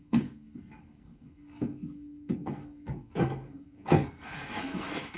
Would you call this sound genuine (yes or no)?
no